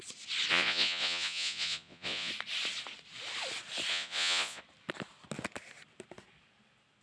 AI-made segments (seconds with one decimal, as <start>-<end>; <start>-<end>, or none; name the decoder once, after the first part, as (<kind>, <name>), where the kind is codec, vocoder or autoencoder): 0.5-2.3 (vocoder, Vocos); 3.9-4.6